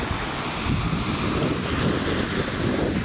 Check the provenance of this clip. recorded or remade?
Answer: recorded